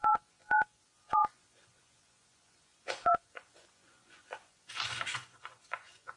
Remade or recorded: remade